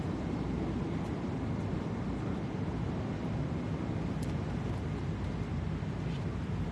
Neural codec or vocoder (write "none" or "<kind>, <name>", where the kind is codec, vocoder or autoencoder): none